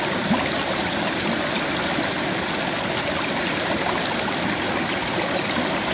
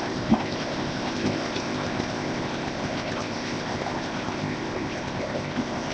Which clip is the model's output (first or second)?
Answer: second